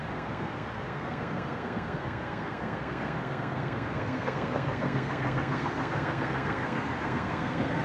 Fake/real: fake